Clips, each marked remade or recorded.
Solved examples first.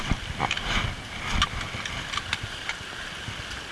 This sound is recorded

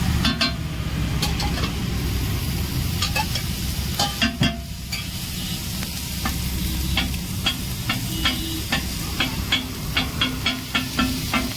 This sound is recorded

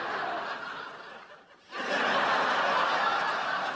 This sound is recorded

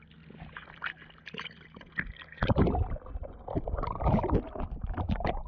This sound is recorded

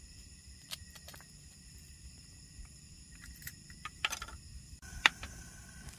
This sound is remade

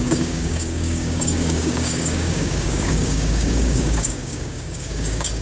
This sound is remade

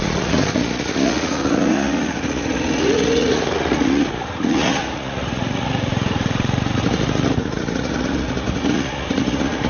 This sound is remade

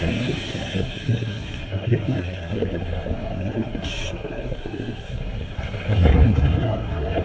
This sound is remade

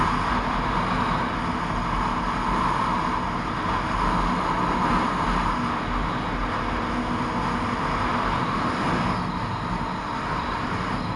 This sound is recorded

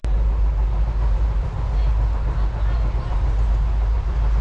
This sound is recorded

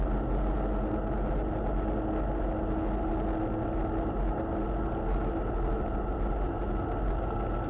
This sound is recorded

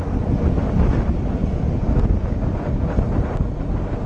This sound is recorded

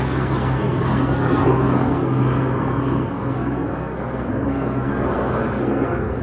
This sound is remade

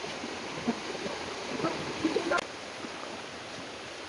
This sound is recorded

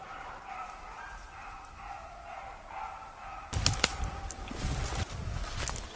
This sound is recorded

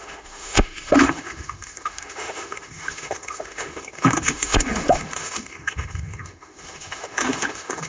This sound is remade